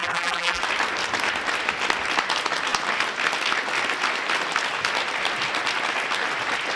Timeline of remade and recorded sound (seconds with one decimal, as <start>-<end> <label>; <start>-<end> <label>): 0.0-0.6 remade; 0.6-6.8 recorded